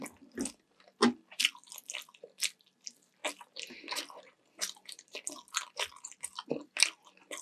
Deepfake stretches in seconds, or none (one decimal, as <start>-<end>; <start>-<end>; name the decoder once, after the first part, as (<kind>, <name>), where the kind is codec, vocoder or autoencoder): none

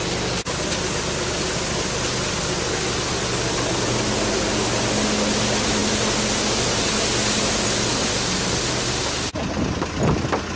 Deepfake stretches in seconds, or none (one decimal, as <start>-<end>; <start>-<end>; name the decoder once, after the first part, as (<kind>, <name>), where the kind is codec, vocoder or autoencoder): none

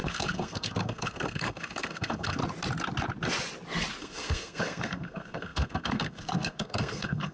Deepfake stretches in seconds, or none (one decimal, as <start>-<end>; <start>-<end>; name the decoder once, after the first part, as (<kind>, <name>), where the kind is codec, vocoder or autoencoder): 0.0-2.4 (codec, SNAC); 4.0-7.3

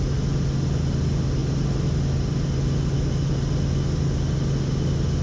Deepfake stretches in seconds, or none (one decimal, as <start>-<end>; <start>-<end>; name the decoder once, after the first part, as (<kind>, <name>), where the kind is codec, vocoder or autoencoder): none